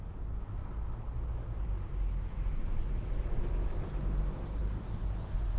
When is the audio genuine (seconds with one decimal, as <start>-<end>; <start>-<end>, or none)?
0.0-5.6